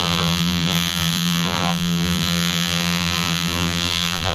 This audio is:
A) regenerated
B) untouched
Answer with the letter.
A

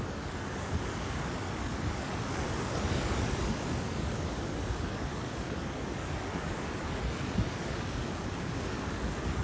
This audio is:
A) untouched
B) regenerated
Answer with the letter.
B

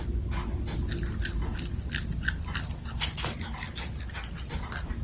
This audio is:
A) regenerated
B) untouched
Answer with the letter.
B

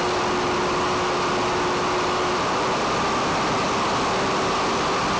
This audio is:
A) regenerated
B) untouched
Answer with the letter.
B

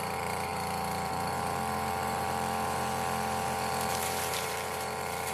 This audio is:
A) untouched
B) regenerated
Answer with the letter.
B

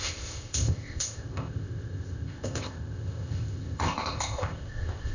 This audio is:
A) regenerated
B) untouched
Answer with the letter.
A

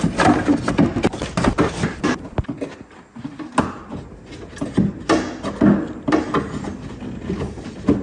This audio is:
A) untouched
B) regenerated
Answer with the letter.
A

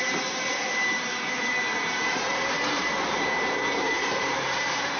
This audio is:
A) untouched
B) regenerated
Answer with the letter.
B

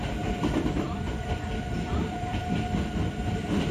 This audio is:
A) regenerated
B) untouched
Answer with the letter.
A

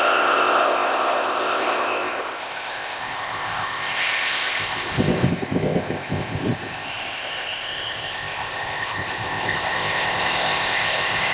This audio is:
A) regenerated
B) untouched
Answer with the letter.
A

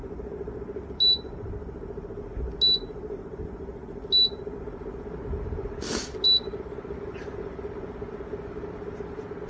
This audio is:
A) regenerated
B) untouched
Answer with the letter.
B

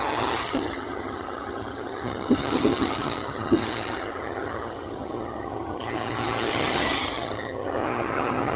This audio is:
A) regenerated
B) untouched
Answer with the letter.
A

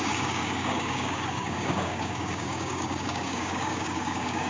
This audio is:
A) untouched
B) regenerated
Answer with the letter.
B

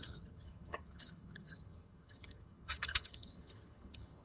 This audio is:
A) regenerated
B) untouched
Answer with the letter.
A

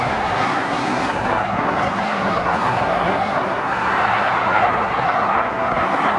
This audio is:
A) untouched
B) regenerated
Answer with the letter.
B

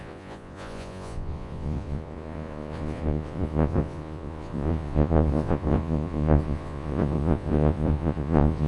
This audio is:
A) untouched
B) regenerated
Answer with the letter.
B